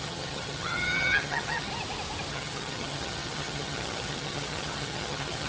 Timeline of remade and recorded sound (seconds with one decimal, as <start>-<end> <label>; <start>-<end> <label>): 0.0-1.7 remade; 1.7-2.3 recorded; 2.3-5.5 remade